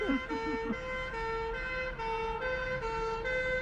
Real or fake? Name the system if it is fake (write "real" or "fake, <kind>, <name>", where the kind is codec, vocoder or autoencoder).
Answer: real